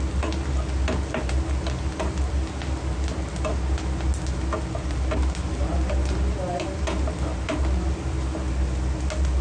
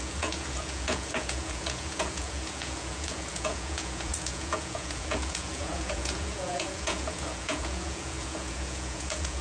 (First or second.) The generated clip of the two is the second